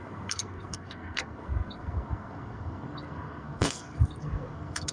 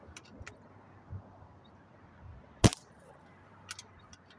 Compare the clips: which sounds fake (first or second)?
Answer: first